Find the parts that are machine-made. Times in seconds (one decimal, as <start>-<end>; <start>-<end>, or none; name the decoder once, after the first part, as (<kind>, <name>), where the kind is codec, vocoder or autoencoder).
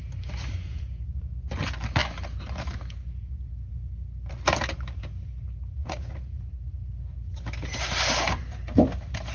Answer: 0.6-1.2 (vocoder, Vocos); 5.8-6.4